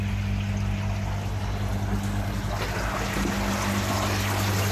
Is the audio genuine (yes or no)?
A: yes